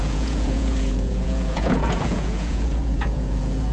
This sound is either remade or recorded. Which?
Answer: remade